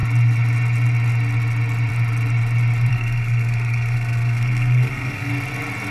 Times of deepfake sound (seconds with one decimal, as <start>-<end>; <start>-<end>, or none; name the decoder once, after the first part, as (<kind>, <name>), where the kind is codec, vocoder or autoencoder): 2.9-5.3 (codec, SNAC)